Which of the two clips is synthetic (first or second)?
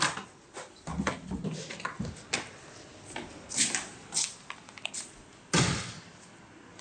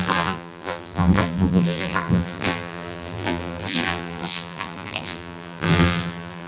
second